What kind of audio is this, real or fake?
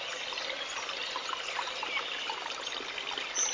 real